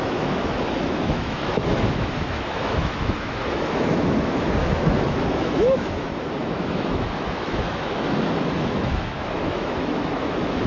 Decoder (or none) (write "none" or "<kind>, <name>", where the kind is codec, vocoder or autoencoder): autoencoder, DAC-VAE